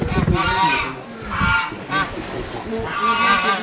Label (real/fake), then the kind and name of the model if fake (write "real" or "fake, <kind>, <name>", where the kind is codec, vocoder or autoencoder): real